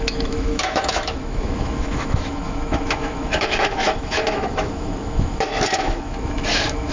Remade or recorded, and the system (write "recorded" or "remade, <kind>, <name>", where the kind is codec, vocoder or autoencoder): remade, autoencoder, DAC-VAE